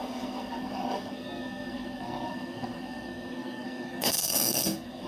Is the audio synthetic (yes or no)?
yes